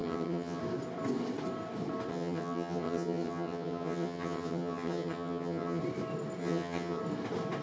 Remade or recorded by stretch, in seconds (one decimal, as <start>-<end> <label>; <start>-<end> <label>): 0.0-0.6 remade; 0.6-2.1 recorded; 2.1-5.8 remade; 5.8-6.4 recorded; 6.4-7.0 remade; 7.0-7.6 recorded